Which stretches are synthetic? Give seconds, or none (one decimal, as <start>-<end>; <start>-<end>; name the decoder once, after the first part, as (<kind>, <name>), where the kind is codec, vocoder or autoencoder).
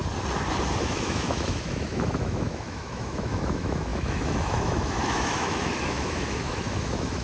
0.8-7.2 (autoencoder, DAC-VAE)